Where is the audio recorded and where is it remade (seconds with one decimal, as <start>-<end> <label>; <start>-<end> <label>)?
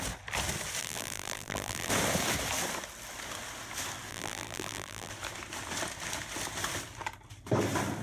0.0-0.8 recorded; 0.8-1.9 remade; 1.9-4.1 recorded; 4.1-5.1 remade; 5.1-8.0 recorded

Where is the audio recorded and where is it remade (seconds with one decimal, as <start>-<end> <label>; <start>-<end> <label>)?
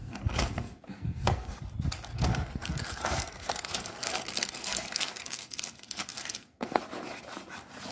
0.0-1.6 remade; 1.6-2.1 recorded; 2.1-6.8 remade; 6.8-7.9 recorded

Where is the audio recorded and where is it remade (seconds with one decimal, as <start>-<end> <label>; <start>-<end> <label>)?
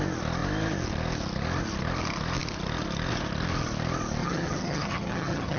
0.0-4.2 recorded; 4.2-5.6 remade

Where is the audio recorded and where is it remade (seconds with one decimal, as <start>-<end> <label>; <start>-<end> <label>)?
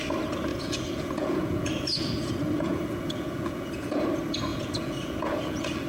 0.0-0.5 recorded; 0.5-4.0 remade; 4.0-4.5 recorded; 4.5-5.9 remade